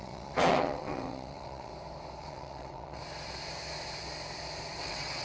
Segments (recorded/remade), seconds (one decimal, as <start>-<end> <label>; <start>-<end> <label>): 0.0-1.7 remade; 1.7-2.2 recorded; 2.2-3.0 remade; 3.0-4.8 recorded; 4.8-5.2 remade